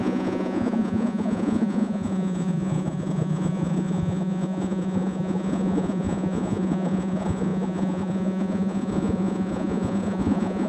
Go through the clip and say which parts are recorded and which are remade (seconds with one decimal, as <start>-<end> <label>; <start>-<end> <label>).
0.0-10.7 remade